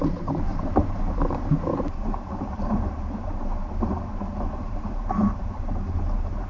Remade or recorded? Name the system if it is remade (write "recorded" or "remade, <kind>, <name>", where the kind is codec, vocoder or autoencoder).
remade, vocoder, BigVGAN v2